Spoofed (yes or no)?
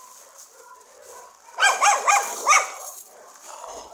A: yes